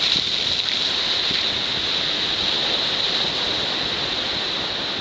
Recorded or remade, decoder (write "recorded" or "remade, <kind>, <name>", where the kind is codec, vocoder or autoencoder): recorded